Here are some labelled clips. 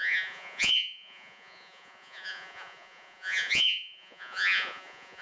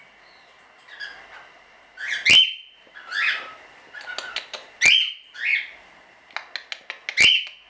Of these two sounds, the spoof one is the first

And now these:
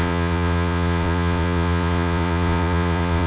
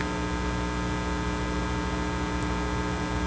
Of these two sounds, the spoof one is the first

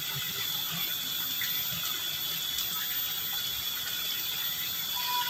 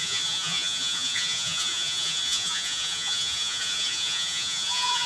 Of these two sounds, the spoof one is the second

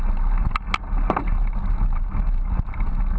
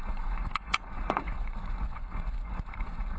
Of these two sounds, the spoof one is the second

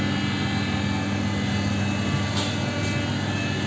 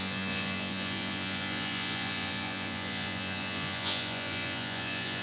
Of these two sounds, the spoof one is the second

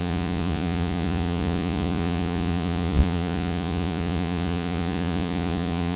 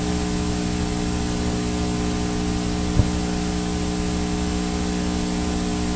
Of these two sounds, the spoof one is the first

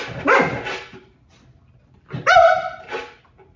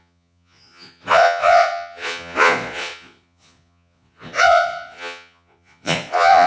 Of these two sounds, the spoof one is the second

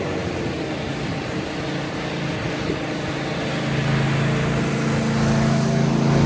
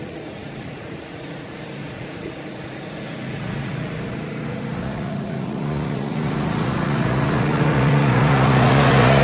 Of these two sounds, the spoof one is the second